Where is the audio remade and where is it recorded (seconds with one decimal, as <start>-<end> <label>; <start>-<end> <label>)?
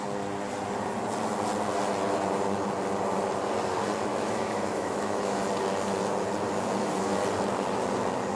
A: 0.0-4.1 recorded; 4.1-5.4 remade; 5.4-8.4 recorded